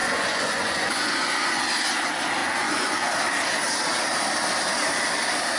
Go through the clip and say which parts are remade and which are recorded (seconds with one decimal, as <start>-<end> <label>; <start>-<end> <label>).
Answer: 0.0-1.6 remade; 1.6-2.4 recorded; 2.4-3.1 remade; 3.1-5.6 recorded